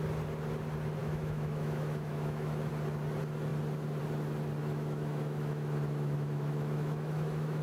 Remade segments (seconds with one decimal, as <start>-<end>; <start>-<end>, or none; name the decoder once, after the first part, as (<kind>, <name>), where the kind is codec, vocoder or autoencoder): 1.0-2.7 (autoencoder, DAC-VAE); 4.6-7.6